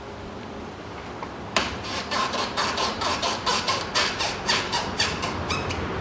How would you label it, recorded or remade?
remade